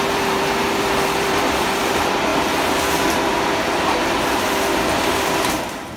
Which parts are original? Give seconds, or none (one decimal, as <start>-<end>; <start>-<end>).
2.3-3.8